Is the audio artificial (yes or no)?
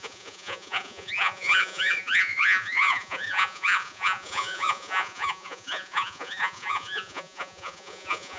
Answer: yes